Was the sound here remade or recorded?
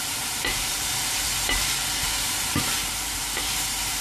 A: remade